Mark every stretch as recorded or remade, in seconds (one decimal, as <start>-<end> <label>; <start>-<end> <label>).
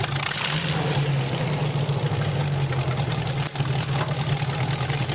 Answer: 0.0-5.1 recorded